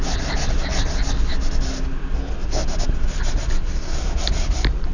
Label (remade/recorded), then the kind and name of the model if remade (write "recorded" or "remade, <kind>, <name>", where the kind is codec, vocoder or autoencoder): recorded